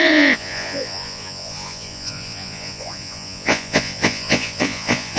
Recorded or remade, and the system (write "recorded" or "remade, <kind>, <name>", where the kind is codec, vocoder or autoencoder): remade, vocoder, Vocos